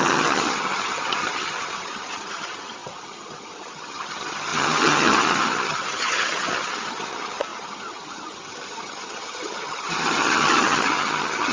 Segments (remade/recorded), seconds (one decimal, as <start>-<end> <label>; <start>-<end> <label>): 0.0-11.5 remade